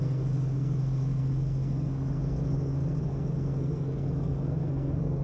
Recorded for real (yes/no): no